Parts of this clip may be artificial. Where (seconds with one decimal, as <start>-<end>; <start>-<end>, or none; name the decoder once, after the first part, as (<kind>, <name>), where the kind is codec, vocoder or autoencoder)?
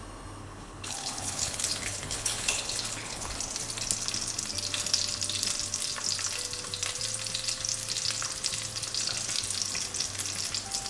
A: 0.4-3.3 (codec, HILCodec)